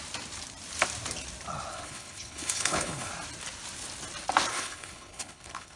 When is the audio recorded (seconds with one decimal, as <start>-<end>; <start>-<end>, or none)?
0.0-1.7; 3.1-4.5